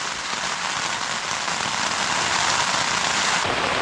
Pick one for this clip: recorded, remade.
recorded